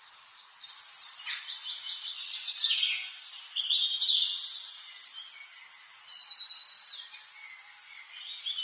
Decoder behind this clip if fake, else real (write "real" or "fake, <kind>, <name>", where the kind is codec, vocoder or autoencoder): real